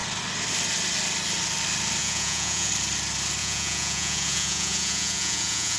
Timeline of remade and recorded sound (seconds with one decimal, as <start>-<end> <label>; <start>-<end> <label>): 0.0-2.0 recorded; 2.0-2.7 remade; 2.7-3.4 recorded; 3.4-5.8 remade